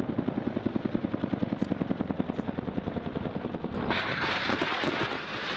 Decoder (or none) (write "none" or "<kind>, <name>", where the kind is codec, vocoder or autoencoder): none